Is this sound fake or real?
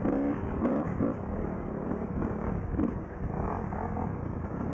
fake